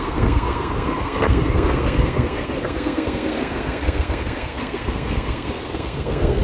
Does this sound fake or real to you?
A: fake